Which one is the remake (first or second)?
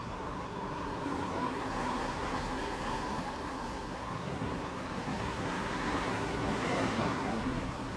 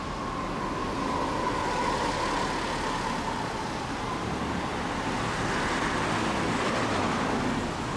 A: first